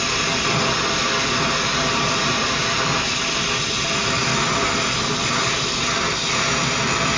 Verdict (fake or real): real